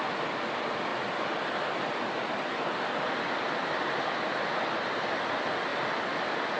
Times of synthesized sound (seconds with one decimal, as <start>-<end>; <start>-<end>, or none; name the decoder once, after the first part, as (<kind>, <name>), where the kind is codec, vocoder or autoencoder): none